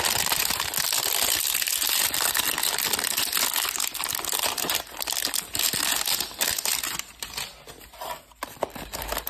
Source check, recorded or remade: recorded